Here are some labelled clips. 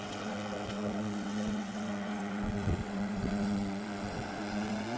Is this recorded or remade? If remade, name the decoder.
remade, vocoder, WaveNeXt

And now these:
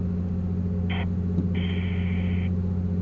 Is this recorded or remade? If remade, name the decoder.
recorded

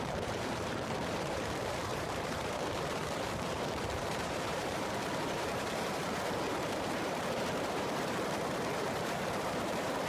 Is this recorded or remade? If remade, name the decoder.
remade, vocoder, BigVGAN v2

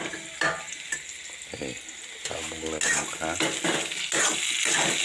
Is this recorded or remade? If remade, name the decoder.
recorded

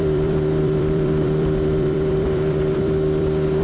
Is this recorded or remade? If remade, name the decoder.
remade, vocoder, BigVGAN v2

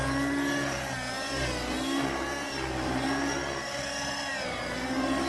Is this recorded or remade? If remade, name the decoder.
recorded